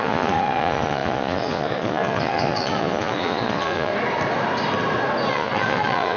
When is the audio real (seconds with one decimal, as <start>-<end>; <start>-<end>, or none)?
3.9-5.3